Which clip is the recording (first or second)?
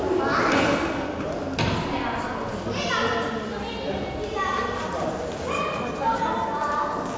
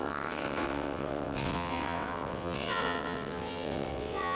first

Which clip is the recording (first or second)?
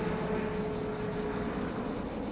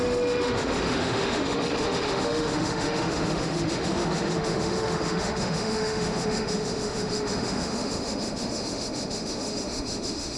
first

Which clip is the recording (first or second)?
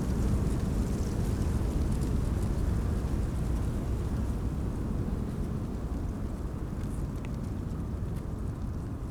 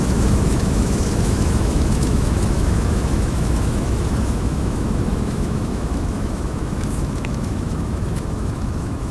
first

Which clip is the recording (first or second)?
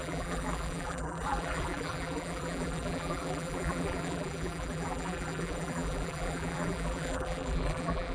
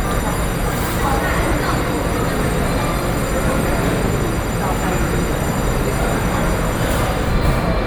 second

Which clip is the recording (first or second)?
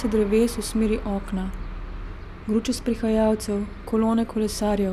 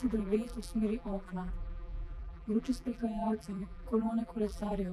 first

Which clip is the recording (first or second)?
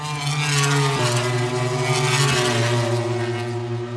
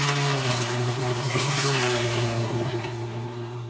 first